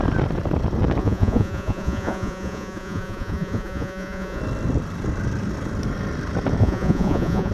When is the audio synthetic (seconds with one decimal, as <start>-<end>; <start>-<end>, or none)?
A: 1.0-4.4; 6.6-7.5